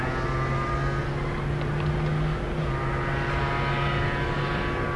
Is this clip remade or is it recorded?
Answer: recorded